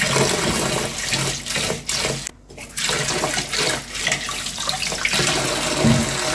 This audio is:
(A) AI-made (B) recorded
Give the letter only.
B